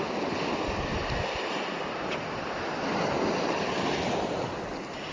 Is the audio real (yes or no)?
yes